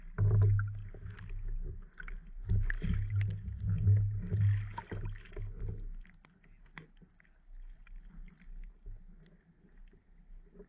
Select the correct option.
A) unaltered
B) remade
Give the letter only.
A